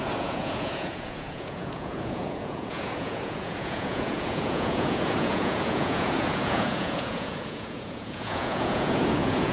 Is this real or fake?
fake